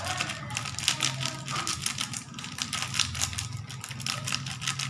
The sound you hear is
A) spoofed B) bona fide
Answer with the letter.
B